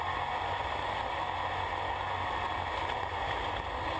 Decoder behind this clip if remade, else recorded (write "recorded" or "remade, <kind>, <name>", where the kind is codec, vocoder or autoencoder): recorded